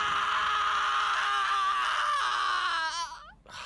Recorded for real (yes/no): yes